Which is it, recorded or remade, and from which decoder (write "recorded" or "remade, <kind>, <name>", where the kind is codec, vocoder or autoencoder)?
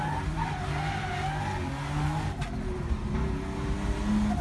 recorded